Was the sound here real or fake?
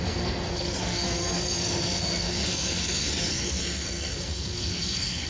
fake